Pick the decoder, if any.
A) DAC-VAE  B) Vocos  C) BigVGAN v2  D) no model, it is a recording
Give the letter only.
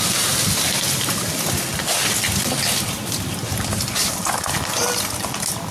D